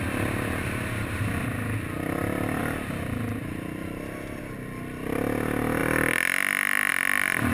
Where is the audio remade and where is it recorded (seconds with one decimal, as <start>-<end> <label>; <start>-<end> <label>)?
0.0-7.5 recorded